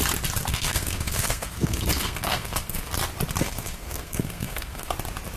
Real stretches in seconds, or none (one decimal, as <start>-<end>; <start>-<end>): 0.0-0.5; 2.9-3.4; 4.9-5.4